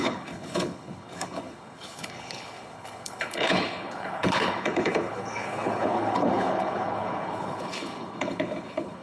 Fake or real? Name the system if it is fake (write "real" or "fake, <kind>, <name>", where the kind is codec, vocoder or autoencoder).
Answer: fake, codec, HILCodec